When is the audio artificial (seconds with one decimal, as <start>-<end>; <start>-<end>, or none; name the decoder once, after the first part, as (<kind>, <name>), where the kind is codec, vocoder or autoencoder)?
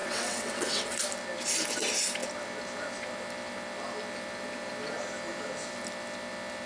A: 0.0-1.0 (vocoder, WaveNeXt)